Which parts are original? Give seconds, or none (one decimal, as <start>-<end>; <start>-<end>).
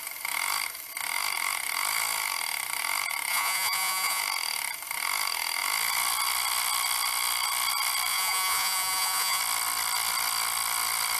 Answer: 0.0-3.3; 4.2-8.1; 9.4-11.2